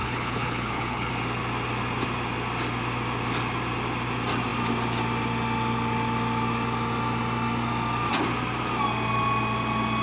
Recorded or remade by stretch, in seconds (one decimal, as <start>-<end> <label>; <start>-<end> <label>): 0.0-1.1 remade; 1.1-10.0 recorded